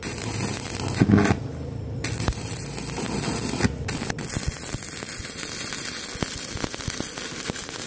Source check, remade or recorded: recorded